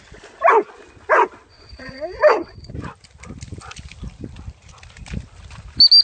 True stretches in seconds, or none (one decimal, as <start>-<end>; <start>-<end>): 0.0-1.5; 2.7-6.0